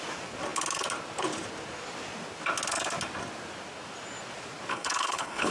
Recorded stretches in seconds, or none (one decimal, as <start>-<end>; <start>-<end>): 0.0-4.7